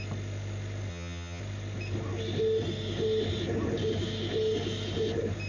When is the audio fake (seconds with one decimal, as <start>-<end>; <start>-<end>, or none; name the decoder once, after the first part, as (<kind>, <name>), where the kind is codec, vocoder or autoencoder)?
0.9-1.4 (vocoder, HiFi-GAN)